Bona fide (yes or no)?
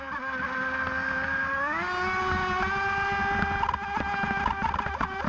yes